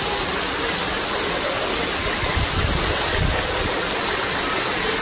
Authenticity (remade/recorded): recorded